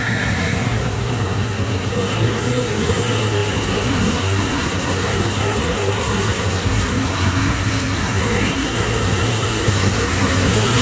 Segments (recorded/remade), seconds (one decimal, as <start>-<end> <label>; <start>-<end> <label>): 0.0-10.8 remade